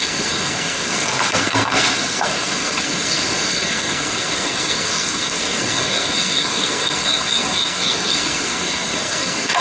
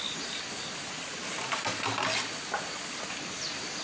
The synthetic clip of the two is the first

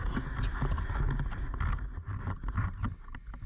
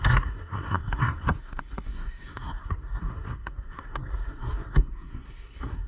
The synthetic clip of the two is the second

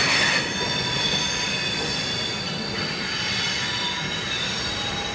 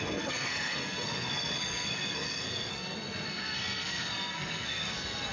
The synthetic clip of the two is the second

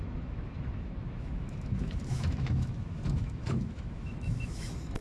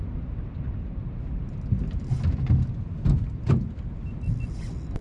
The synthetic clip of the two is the first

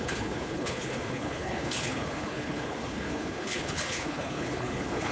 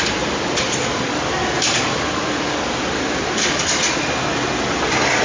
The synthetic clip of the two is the first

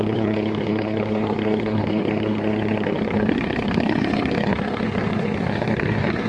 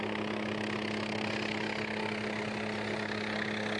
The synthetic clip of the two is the first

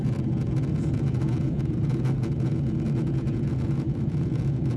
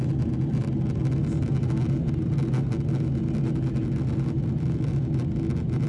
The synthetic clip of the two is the first